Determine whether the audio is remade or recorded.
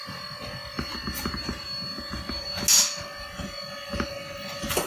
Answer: recorded